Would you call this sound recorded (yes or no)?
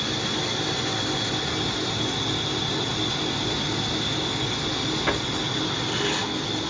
yes